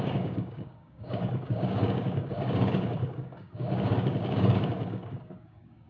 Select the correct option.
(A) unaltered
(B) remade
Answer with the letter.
B